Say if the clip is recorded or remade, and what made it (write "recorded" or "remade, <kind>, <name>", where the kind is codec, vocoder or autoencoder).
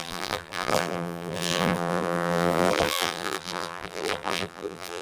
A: remade, vocoder, BigVGAN v2